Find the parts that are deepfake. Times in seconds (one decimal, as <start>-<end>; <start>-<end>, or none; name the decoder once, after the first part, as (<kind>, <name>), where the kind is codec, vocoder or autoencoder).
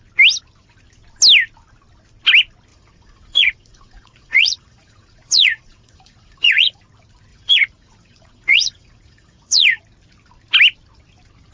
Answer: 2.7-6.8 (vocoder, Vocos); 7.3-9.8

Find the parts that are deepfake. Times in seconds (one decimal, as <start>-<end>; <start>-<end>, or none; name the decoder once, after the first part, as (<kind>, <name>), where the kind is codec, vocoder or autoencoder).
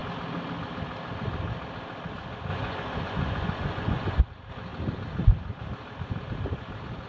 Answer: 2.5-4.2 (vocoder, Vocos)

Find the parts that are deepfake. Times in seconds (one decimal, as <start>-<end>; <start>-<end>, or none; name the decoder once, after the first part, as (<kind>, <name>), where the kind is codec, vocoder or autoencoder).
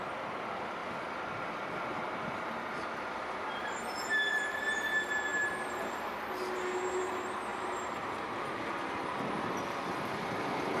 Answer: 5.3-6.0 (vocoder, BigVGAN v2); 7.5-8.9